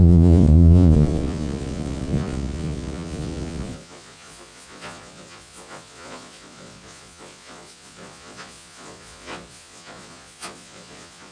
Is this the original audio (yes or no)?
no